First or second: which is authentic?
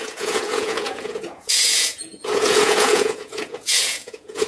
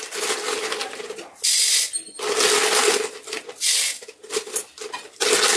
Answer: second